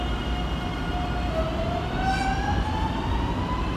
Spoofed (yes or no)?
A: no